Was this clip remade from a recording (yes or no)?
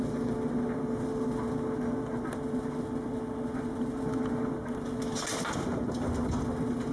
no